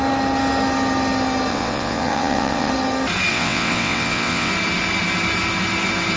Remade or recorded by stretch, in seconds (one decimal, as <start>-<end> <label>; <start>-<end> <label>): 0.0-1.5 recorded; 1.5-2.7 remade; 2.7-3.3 recorded; 3.3-4.5 remade; 4.5-6.2 recorded